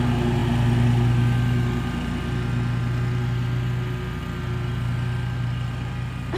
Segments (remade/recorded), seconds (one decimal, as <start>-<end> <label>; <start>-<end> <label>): 0.0-6.4 recorded